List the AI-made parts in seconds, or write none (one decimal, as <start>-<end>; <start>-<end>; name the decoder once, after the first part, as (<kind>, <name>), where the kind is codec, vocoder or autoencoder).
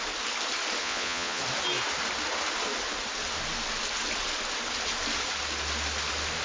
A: 0.8-1.4 (vocoder, Vocos)